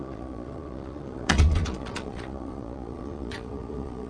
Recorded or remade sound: remade